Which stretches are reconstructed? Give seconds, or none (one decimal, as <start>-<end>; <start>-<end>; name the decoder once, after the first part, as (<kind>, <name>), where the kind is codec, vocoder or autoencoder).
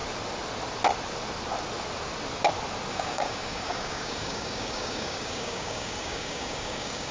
2.9-7.1 (codec, DAC)